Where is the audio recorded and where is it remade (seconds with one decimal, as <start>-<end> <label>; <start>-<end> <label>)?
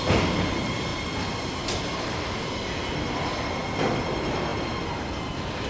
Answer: 0.0-5.7 recorded